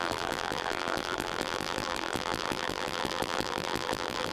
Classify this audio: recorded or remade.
remade